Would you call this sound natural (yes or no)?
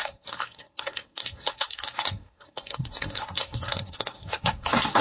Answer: no